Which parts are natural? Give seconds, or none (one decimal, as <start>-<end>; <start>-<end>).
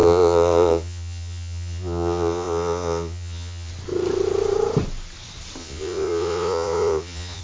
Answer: 3.7-5.6